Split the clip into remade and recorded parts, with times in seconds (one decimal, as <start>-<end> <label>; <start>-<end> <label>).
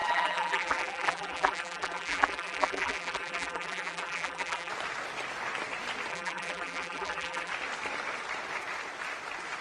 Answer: 0.0-4.7 remade; 4.7-6.1 recorded; 6.1-7.5 remade; 7.5-9.6 recorded